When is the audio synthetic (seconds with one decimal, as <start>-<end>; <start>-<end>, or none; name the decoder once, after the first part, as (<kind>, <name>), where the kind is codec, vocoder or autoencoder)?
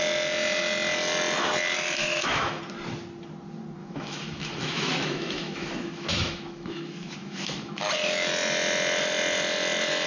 2.0-2.6 (autoencoder, DAC-VAE); 3.8-7.9